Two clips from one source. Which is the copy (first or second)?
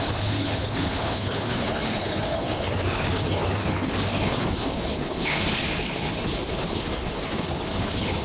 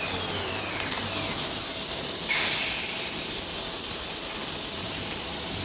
first